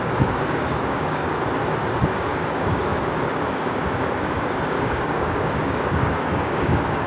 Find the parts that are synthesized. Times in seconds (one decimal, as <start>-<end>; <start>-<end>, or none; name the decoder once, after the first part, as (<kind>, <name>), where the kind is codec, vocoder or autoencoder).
0.0-1.2 (codec, DAC); 1.9-7.1